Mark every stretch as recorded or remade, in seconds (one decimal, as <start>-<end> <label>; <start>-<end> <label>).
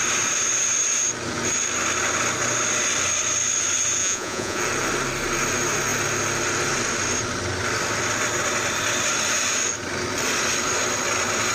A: 0.0-4.0 recorded; 4.0-4.6 remade; 4.6-11.5 recorded